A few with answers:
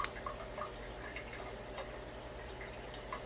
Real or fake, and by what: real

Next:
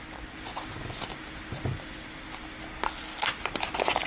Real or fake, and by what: real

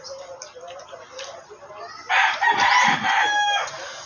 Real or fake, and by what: real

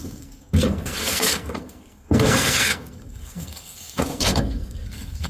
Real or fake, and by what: fake, codec, SNAC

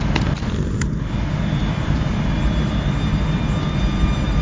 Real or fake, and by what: real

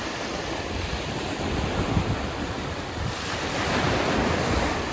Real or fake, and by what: fake, vocoder, BigVGAN v2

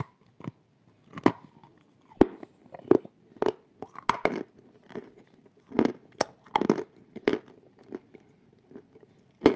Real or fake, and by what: real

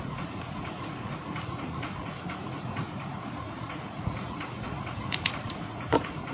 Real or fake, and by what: fake, vocoder, Vocos